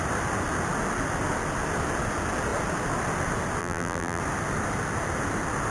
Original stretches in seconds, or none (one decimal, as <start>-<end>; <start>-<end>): 0.0-3.6; 4.2-5.7